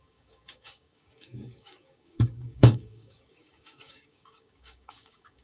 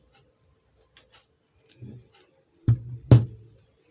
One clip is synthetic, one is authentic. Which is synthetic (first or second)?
first